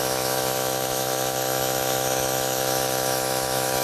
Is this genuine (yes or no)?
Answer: no